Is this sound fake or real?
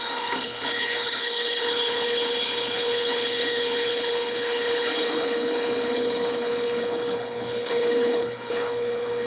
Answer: fake